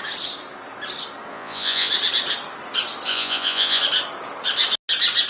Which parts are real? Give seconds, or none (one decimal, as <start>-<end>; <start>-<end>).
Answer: 0.0-1.3; 1.9-3.1; 3.8-5.3